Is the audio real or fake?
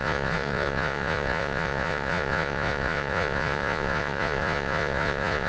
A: fake